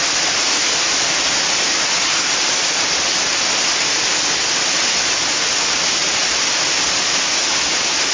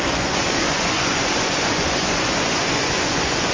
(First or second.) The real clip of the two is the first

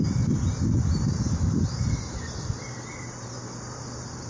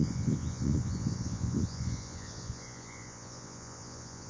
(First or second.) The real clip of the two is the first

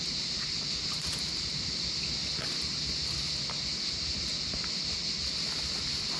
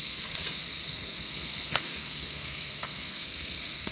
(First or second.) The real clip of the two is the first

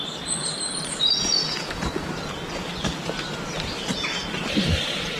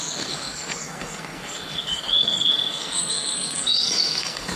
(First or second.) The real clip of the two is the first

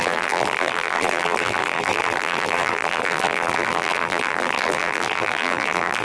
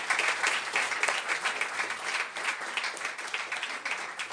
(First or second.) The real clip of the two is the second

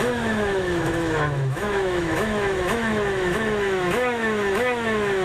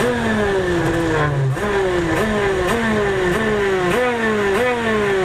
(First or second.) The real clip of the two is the second